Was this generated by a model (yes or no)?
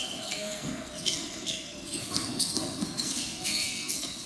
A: yes